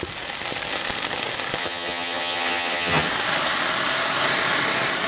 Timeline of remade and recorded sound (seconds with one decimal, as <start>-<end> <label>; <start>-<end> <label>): 0.0-1.6 recorded; 1.6-3.1 remade; 3.1-5.1 recorded